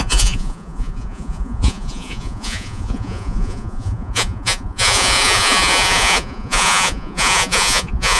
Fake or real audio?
fake